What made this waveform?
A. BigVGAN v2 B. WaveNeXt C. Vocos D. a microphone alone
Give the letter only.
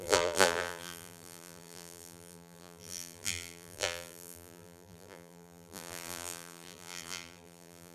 A